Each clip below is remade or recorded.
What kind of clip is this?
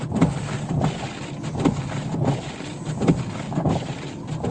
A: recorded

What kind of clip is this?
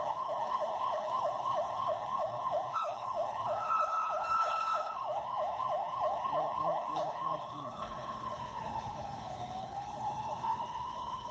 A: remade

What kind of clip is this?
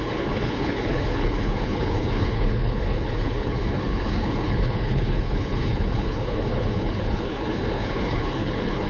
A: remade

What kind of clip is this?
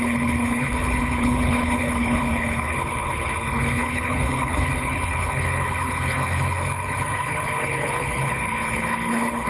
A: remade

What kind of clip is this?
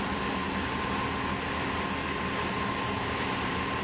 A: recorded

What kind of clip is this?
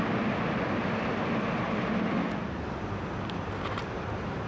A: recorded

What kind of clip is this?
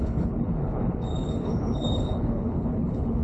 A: remade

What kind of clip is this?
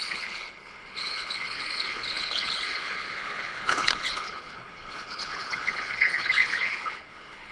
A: remade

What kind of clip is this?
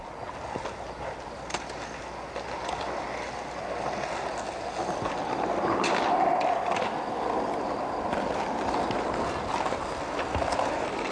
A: recorded